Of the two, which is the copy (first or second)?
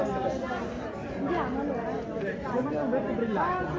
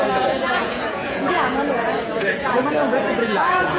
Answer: second